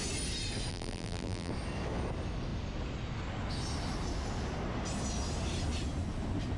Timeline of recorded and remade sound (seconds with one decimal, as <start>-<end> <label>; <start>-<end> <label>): 0.0-0.7 recorded; 0.7-1.5 remade; 1.5-6.6 recorded